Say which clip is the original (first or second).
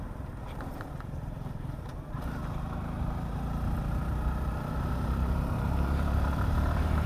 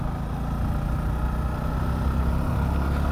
second